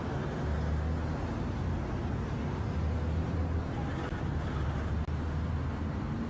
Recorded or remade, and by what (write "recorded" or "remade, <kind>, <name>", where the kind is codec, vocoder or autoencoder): recorded